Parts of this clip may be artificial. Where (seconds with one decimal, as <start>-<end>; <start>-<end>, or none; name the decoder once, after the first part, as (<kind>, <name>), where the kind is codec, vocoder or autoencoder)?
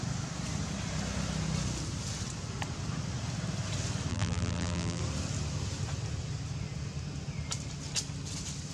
4.1-5.0 (vocoder, BigVGAN v2)